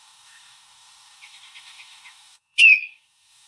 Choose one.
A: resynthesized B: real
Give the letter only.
A